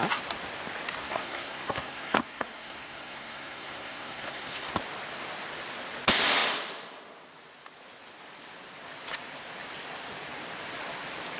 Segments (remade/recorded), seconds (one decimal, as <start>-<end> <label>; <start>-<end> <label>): 0.0-1.0 recorded; 1.0-4.7 remade; 4.7-11.4 recorded